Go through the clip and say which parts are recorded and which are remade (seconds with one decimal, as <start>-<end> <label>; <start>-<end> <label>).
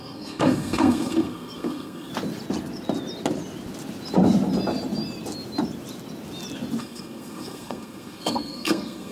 0.0-2.1 remade; 2.1-6.8 recorded; 6.8-9.1 remade